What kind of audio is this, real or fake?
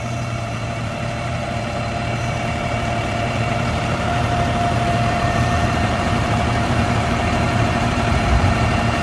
fake